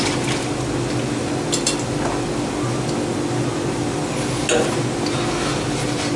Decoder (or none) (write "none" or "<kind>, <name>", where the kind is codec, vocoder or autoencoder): none